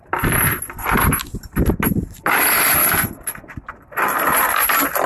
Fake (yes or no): no